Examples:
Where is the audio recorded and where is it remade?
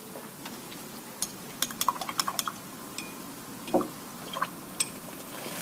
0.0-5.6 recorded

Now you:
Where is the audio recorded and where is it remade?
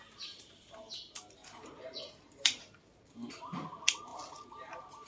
0.0-1.4 recorded; 1.4-2.6 remade; 2.6-5.1 recorded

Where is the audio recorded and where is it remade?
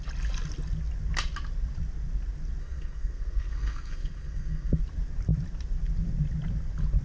0.0-2.6 recorded; 2.6-4.8 remade; 4.8-7.0 recorded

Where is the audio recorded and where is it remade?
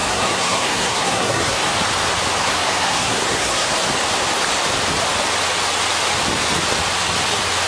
0.0-1.6 remade; 1.6-2.4 recorded; 2.4-3.7 remade; 3.7-7.7 recorded